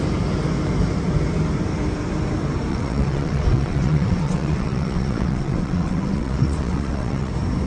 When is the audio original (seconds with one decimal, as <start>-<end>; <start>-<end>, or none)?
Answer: 0.0-2.7; 7.3-7.7